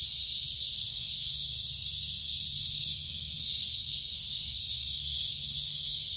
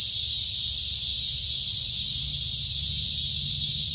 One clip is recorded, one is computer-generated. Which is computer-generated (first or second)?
first